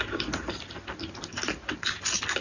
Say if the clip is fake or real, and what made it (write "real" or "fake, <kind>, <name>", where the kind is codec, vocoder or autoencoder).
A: real